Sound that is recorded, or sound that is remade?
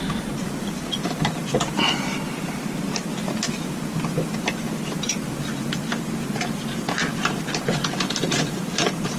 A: remade